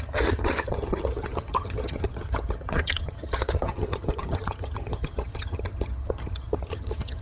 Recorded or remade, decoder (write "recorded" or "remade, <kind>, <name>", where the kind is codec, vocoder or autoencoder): remade, vocoder, HiFi-GAN